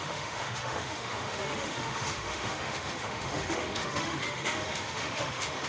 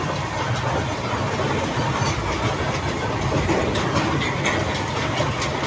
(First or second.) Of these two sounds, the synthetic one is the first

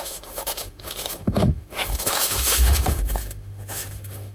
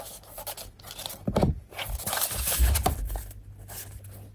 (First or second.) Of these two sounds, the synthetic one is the first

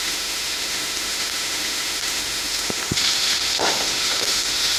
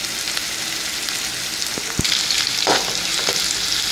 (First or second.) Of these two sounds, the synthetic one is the first